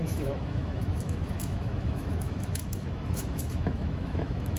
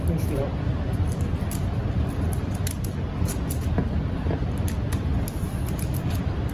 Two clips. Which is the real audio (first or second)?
second